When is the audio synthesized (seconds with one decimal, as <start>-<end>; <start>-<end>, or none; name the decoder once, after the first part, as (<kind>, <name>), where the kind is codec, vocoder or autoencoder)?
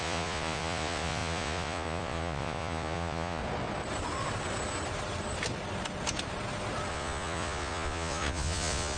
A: 0.0-3.4 (vocoder, Vocos); 6.9-9.0